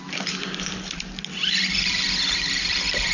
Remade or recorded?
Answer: recorded